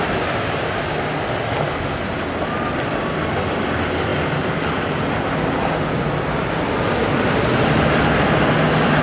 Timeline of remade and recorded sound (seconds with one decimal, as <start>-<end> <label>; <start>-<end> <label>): 0.0-9.0 recorded